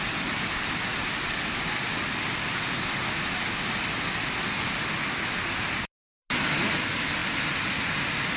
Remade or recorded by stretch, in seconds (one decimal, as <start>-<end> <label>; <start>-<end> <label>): 0.0-8.4 recorded